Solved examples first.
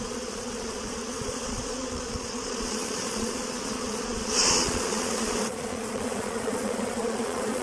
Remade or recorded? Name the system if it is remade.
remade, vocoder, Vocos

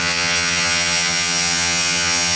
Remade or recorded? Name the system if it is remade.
remade, vocoder, HiFi-GAN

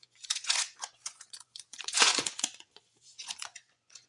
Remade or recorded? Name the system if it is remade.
remade, vocoder, Vocos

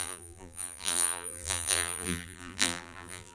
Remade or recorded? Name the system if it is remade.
remade, vocoder, BigVGAN v2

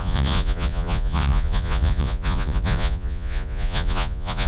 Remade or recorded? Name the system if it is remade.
remade, vocoder, Vocos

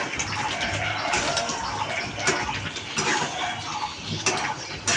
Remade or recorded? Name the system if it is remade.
recorded